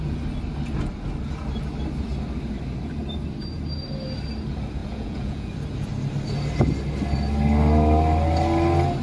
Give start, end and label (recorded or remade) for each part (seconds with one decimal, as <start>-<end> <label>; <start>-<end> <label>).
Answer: 0.0-4.8 recorded; 4.8-5.5 remade; 5.5-9.0 recorded